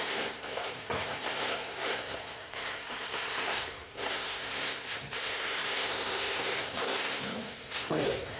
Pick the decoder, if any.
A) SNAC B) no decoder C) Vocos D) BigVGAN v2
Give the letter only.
A